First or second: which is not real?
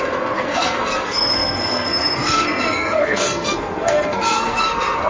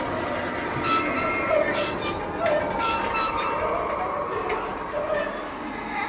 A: first